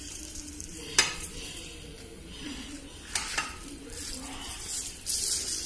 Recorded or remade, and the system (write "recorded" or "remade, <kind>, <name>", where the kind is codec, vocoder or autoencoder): remade, vocoder, BigVGAN v2